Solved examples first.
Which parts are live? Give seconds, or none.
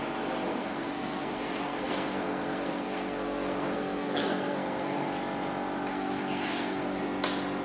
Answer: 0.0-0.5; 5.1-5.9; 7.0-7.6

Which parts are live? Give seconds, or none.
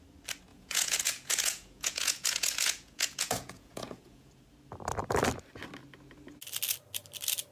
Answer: 0.0-0.5; 4.3-7.5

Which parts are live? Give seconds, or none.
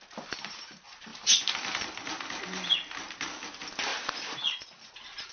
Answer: 0.0-5.3